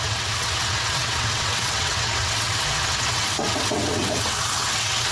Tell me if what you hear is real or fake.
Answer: fake